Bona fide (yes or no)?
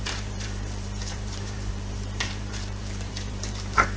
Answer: no